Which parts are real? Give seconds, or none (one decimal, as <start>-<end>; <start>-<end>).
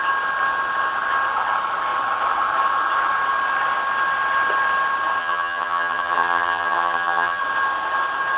0.0-5.2; 7.4-8.4